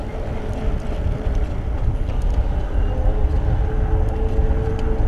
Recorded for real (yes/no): yes